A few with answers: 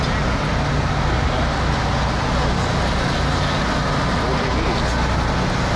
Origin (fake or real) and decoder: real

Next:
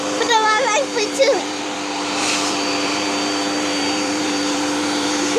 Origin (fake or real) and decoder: fake, vocoder, BigVGAN v2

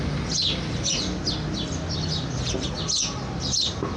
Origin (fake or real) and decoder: real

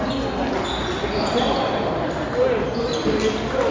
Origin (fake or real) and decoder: real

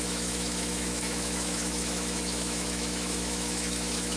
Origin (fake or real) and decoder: fake, autoencoder, DAC-VAE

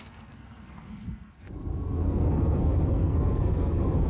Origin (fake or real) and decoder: fake, codec, SNAC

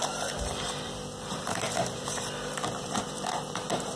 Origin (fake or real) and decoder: fake, vocoder, BigVGAN v2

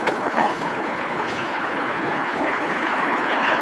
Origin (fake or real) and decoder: fake, codec, HILCodec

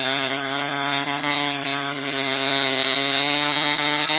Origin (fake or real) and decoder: fake, vocoder, HiFi-GAN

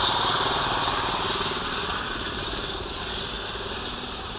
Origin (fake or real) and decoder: real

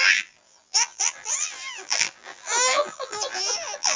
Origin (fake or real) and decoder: fake, vocoder, BigVGAN v2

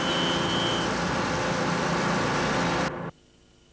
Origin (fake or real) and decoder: real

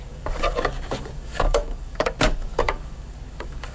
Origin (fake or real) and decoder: fake, codec, DAC